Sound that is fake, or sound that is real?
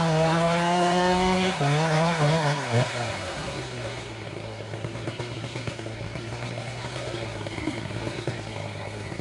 fake